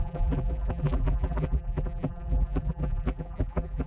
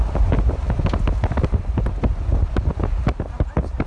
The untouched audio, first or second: second